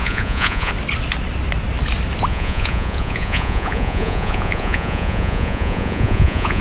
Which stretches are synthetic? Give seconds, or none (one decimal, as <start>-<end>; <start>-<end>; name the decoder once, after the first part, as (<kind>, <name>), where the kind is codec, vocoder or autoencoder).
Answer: 0.0-0.7 (vocoder, Vocos); 2.3-6.6